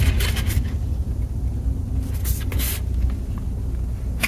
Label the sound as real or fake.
real